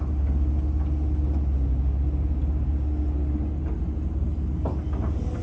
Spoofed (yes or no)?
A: no